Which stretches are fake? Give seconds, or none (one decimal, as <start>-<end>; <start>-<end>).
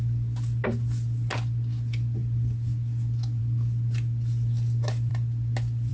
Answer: none